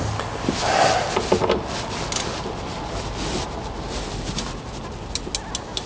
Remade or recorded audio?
recorded